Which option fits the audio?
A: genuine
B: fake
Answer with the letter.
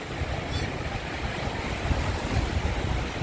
A